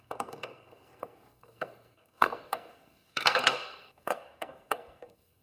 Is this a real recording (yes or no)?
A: no